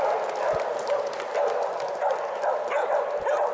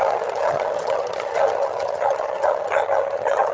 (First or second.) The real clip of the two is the first